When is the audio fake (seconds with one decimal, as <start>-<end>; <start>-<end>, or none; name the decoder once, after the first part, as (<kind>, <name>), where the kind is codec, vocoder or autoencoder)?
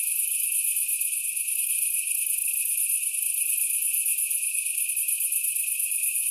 none